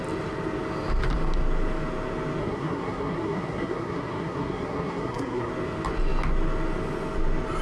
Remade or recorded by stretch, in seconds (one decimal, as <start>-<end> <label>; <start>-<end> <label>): 0.0-2.4 recorded; 2.4-5.5 remade; 5.5-7.6 recorded